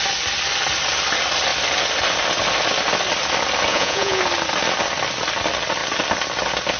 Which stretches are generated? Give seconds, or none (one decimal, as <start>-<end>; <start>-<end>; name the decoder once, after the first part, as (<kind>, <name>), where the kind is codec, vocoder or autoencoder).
3.7-4.2 (vocoder, Vocos)